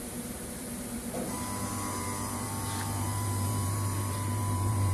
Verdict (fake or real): fake